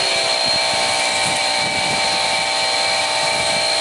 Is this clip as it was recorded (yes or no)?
yes